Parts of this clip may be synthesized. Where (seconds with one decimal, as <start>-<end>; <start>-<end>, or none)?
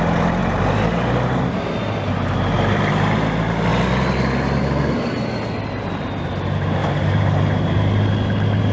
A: 6.8-8.1